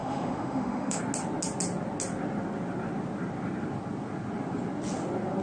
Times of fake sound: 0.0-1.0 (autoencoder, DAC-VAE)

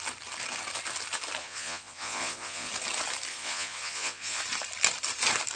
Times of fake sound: 1.4-2.7 (vocoder, Vocos); 3.3-4.4

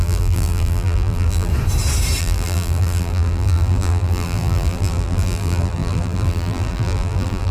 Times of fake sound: 0.0-1.5 (vocoder, BigVGAN v2); 2.2-7.5